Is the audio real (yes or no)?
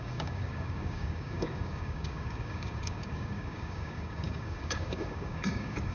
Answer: no